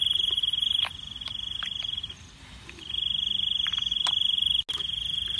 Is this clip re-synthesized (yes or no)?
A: no